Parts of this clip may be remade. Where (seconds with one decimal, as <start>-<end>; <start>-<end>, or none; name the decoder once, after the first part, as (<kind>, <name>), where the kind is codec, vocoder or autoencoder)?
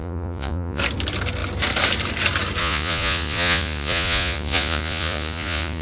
0.0-0.8 (vocoder, Vocos); 2.6-5.8